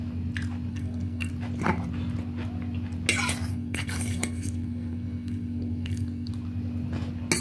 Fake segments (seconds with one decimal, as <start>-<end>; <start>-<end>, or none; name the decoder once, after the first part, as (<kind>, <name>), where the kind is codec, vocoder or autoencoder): 0.7-1.3 (codec, SNAC); 3.5-6.3